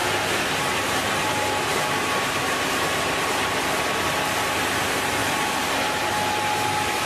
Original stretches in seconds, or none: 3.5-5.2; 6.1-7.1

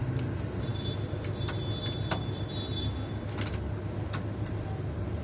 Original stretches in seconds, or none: 0.0-5.2

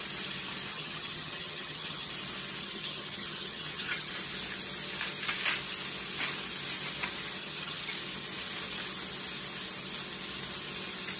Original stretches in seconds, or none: 0.0-0.7; 2.1-2.6; 4.1-7.4; 7.9-11.2

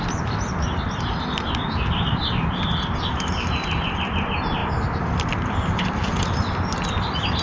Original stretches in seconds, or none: 0.0-7.4

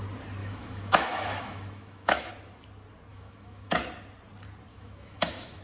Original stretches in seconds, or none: 0.0-0.4; 2.3-3.1; 3.7-4.7

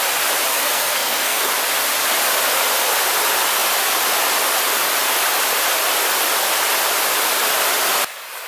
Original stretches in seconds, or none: 0.0-0.5; 1.5-8.5

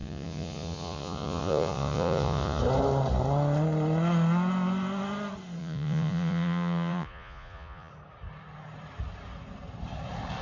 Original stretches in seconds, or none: 2.6-5.6; 7.9-10.4